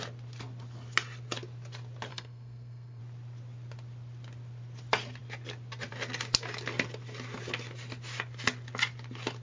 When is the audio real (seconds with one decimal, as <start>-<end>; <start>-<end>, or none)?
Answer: 0.0-2.1; 3.0-9.4